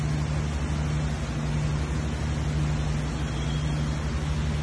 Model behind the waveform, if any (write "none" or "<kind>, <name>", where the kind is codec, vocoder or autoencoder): none